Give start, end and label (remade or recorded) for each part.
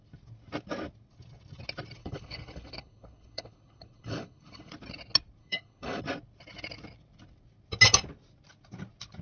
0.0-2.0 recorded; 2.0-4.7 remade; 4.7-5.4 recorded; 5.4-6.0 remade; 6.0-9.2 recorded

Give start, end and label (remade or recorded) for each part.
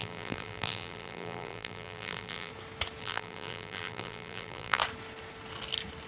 0.0-2.5 remade; 2.5-3.0 recorded; 3.0-4.8 remade; 4.8-6.1 recorded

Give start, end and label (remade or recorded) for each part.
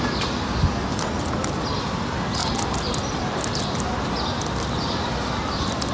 0.0-5.9 recorded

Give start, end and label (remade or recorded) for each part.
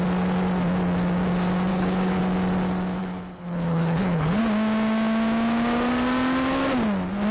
0.0-1.7 recorded; 1.7-2.2 remade; 2.2-3.0 recorded; 3.0-4.4 remade; 4.4-7.3 recorded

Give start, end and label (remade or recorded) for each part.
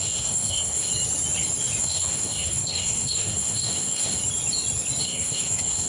0.0-0.9 remade; 0.9-1.8 recorded; 1.8-4.2 remade; 4.2-5.0 recorded; 5.0-5.9 remade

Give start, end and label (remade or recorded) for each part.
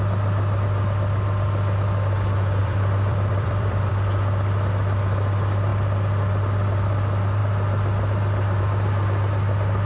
0.0-2.6 recorded; 2.6-3.9 remade; 3.9-9.8 recorded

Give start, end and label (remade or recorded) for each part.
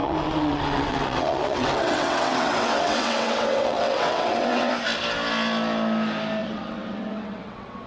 0.0-4.7 remade; 4.7-6.4 recorded; 6.4-7.9 remade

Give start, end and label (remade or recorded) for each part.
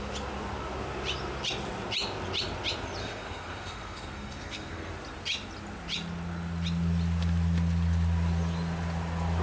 0.0-3.0 recorded; 3.0-4.9 remade; 4.9-9.4 recorded